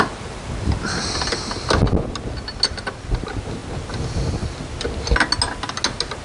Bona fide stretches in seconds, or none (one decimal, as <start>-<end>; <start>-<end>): 0.0-6.2